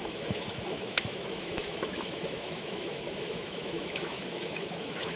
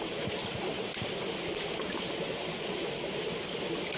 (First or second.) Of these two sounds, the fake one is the first